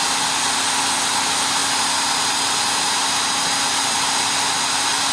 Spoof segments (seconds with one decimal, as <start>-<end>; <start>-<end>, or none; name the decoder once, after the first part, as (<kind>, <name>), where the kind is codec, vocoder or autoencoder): none